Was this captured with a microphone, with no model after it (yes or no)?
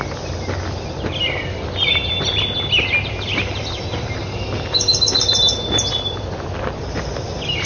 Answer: yes